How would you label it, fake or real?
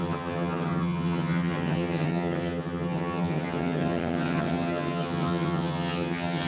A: fake